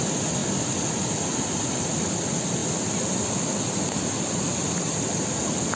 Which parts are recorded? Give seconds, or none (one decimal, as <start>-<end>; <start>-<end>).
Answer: 0.0-5.8